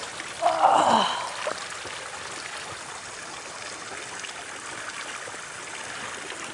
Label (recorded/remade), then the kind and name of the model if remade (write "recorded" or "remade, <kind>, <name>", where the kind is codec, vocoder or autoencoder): recorded